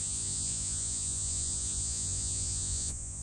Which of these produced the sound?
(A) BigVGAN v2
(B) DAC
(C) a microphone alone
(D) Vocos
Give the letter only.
D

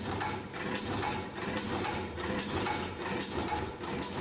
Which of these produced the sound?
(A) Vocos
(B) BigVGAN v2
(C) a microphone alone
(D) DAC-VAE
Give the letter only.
B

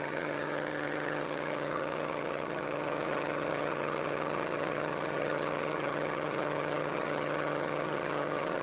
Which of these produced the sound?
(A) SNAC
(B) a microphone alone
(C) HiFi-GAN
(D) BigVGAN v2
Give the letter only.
C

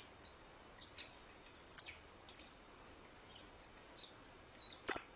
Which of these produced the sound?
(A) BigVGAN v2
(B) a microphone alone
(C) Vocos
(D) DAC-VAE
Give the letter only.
B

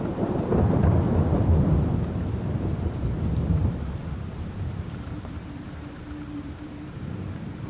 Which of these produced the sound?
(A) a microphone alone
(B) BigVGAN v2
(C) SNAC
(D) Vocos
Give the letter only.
B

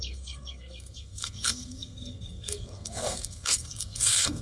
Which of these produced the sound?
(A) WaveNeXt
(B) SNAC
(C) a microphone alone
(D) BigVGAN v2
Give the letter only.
B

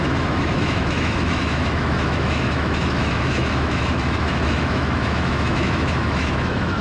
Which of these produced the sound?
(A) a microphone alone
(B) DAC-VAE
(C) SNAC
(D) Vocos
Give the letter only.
B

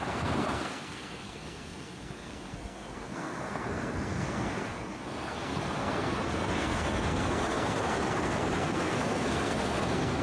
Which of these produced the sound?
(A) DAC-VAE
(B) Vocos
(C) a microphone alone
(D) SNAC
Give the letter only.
D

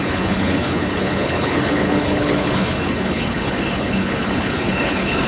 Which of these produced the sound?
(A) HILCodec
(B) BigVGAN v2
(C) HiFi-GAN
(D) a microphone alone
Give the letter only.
A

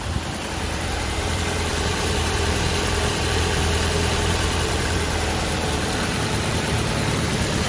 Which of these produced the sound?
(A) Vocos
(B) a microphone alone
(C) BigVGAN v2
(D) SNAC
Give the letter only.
C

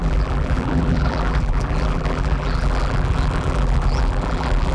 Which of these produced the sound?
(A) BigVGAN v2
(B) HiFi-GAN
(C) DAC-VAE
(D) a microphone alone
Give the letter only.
A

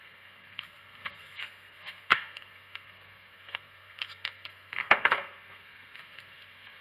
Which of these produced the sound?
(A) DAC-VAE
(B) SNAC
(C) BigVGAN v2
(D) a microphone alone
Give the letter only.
B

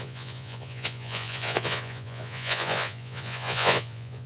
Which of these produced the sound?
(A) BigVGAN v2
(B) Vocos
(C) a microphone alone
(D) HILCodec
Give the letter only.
B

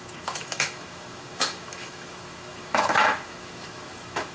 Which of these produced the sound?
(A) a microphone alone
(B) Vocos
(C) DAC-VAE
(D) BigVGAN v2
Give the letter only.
C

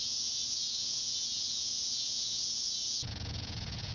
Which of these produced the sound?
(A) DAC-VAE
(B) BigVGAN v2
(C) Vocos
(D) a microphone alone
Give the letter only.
C